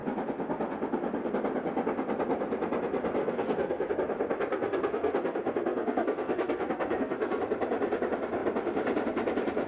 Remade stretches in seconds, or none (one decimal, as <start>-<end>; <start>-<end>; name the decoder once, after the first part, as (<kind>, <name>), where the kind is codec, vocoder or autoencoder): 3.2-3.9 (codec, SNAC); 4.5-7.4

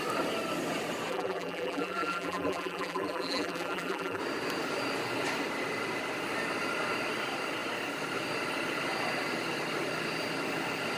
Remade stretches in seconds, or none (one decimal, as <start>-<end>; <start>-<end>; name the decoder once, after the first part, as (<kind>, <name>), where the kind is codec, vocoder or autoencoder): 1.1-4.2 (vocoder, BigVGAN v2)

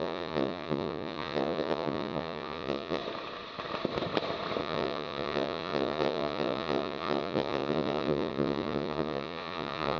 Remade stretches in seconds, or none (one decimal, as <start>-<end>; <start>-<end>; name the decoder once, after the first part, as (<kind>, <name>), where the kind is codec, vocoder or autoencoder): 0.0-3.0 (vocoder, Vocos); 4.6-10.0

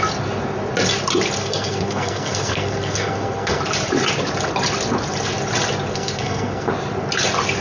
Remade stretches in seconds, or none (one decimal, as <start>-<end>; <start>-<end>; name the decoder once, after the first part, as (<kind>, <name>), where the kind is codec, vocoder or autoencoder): 1.4-3.6 (codec, SNAC); 5.9-6.7

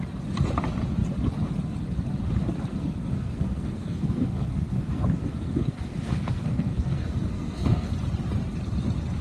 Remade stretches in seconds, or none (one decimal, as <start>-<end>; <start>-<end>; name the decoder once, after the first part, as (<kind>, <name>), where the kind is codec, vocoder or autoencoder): 2.7-7.9 (codec, SNAC)

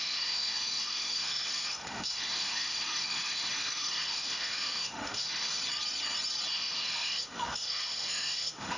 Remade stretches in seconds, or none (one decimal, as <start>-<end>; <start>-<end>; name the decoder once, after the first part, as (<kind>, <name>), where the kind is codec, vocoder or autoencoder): 0.0-5.6 (autoencoder, DAC-VAE); 6.5-8.8

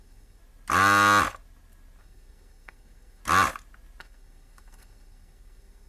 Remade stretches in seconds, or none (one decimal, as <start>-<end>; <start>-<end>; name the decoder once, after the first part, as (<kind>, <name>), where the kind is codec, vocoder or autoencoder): 0.0-0.4 (codec, SNAC); 2.0-3.2; 4.0-5.9